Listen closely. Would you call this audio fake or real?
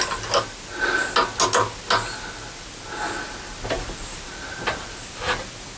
real